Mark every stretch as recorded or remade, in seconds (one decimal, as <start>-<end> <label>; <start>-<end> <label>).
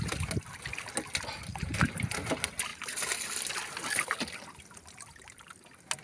0.0-1.5 recorded; 1.5-2.1 remade; 2.1-6.0 recorded